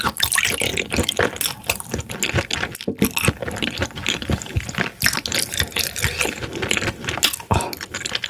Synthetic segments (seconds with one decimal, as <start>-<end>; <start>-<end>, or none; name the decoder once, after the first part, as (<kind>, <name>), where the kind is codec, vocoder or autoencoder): none